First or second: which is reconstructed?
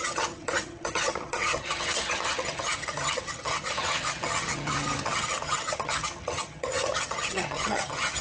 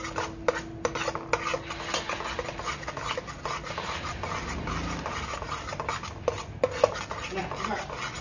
first